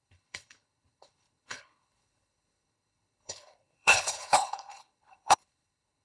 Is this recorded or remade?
remade